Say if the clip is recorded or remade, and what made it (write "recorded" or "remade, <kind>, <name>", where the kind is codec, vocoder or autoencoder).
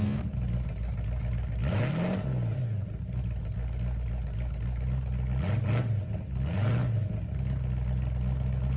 recorded